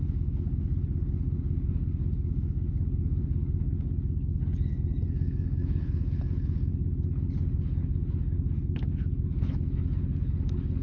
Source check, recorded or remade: remade